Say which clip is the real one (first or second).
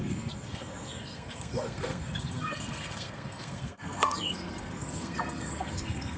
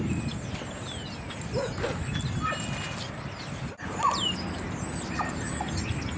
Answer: second